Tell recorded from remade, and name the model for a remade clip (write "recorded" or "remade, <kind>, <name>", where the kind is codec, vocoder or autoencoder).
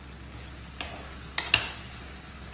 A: recorded